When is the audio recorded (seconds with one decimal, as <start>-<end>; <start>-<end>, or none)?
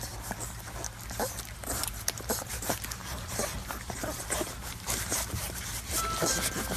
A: 0.0-1.6; 5.7-6.8